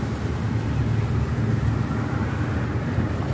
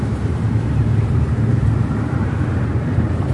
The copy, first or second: second